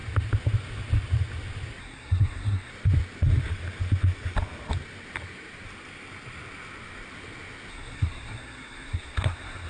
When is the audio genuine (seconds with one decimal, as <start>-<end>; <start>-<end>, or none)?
0.0-1.8; 2.7-7.7